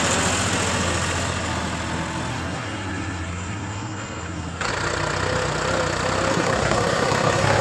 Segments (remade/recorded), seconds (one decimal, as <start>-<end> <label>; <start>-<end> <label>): 0.0-2.3 recorded; 2.3-4.7 remade; 4.7-6.3 recorded; 6.3-7.6 remade